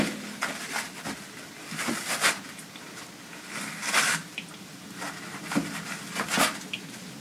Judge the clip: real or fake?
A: real